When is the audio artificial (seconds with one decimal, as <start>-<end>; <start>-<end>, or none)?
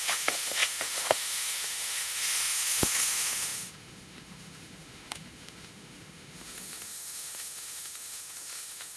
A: 0.0-9.0